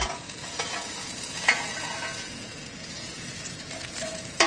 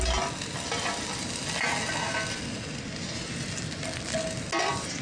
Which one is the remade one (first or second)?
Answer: first